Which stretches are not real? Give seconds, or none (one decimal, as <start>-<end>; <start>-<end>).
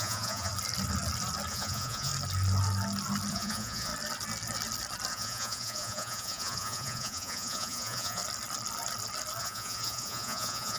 0.0-0.5; 1.5-2.1; 3.3-3.9; 5.1-8.2; 9.4-10.8